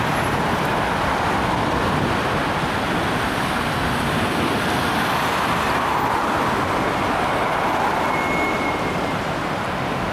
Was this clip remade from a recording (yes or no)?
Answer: no